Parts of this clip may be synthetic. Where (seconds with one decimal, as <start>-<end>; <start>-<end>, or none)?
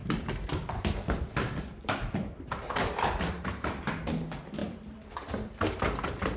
0.0-3.8; 4.6-5.5